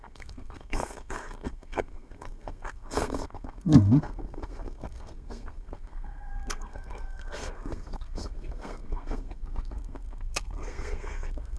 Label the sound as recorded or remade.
remade